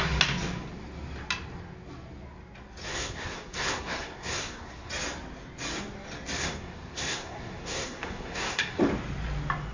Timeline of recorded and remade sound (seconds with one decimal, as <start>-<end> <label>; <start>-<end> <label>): 0.0-2.8 recorded; 2.8-4.9 remade; 4.9-6.4 recorded; 6.4-8.8 remade; 8.8-9.7 recorded